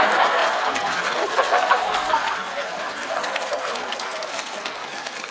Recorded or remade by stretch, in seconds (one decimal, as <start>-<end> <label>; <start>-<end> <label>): 0.0-5.3 remade